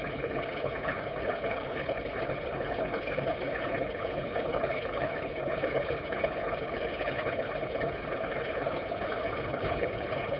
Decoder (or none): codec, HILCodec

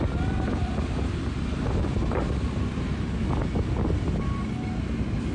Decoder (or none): none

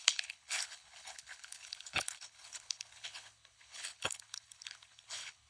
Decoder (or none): codec, HILCodec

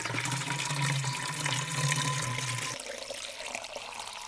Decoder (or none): none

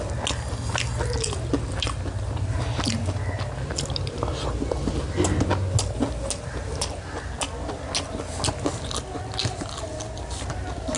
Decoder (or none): none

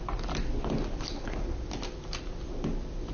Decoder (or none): none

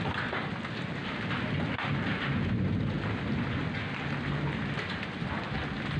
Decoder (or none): none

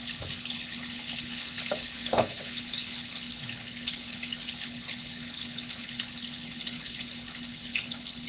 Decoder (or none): codec, HILCodec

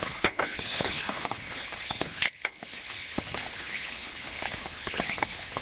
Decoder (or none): codec, HILCodec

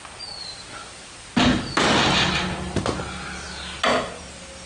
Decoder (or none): none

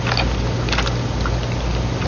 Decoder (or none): none